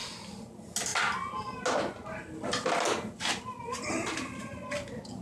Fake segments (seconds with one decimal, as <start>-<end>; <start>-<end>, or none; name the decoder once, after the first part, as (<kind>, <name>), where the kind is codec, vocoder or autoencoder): none